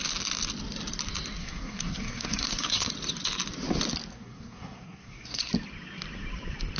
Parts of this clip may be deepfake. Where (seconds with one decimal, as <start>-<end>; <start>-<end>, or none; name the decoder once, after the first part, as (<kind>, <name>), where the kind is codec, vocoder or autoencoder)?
1.4-2.9 (codec, SNAC); 4.1-5.5